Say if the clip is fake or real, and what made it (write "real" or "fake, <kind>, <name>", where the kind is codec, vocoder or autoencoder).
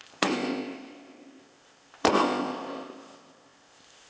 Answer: fake, codec, ZipCodec